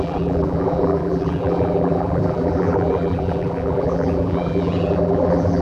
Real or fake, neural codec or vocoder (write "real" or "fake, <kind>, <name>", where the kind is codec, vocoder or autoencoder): fake, vocoder, BigVGAN v2